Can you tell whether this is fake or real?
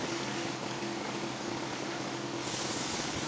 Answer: fake